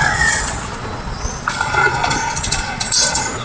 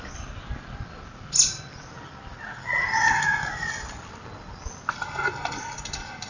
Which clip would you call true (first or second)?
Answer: second